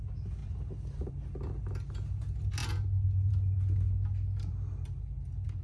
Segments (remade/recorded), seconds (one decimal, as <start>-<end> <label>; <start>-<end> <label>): 0.0-5.6 recorded

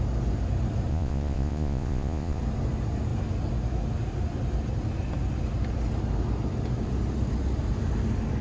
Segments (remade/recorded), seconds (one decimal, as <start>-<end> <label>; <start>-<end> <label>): 0.0-0.9 recorded; 0.9-2.4 remade; 2.4-8.4 recorded

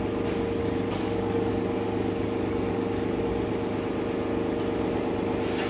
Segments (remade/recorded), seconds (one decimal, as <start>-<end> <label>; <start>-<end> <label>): 0.0-0.6 recorded; 0.6-3.2 remade; 3.2-5.7 recorded

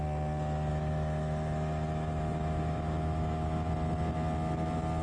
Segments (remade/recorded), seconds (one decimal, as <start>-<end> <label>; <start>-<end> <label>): 0.0-0.7 recorded; 0.7-3.7 remade; 3.7-5.0 recorded

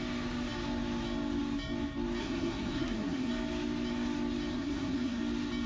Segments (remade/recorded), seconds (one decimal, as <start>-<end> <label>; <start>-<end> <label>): 0.0-2.2 recorded; 2.2-3.3 remade; 3.3-4.5 recorded; 4.5-5.2 remade; 5.2-5.7 recorded

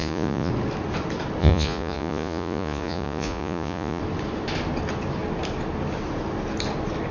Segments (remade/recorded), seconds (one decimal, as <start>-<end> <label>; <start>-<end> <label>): 0.0-0.5 remade; 0.5-1.4 recorded; 1.4-4.0 remade; 4.0-7.1 recorded